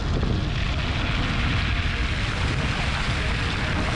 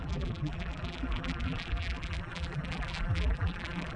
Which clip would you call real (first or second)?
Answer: first